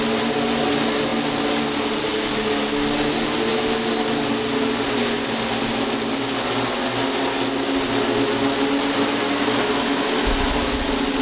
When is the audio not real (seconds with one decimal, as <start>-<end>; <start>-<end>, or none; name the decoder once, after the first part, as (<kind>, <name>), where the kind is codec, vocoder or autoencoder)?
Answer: none